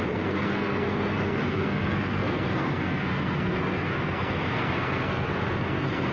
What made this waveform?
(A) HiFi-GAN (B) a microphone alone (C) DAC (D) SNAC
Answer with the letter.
D